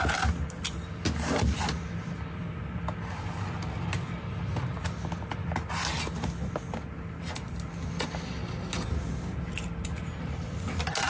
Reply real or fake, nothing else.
real